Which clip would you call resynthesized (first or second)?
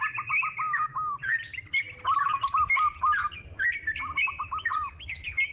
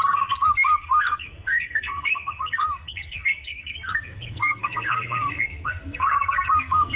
second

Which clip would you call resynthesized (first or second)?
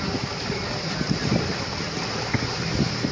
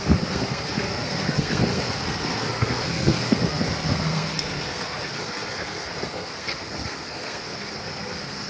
second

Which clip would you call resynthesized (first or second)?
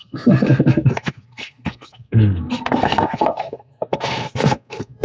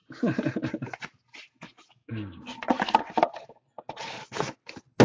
first